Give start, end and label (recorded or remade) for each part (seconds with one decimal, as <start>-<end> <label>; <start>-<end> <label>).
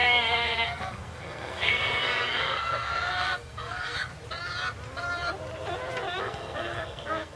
0.0-4.1 remade; 4.1-6.2 recorded; 6.2-7.4 remade